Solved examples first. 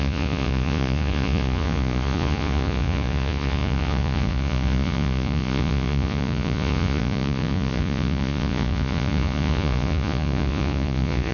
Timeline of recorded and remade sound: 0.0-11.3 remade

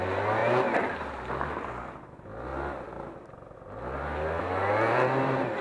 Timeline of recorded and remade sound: 0.0-5.6 recorded

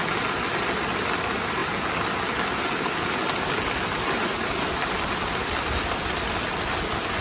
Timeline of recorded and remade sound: 0.0-7.2 recorded

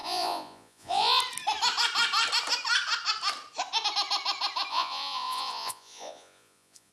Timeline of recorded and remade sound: 0.0-1.2 remade; 1.2-4.7 recorded; 4.7-6.9 remade

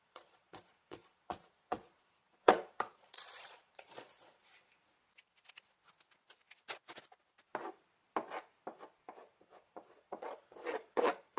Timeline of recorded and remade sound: 0.0-4.4 remade; 4.4-9.4 recorded; 9.4-11.4 remade